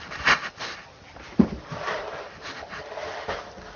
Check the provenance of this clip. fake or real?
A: real